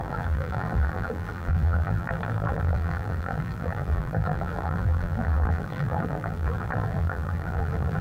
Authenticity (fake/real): fake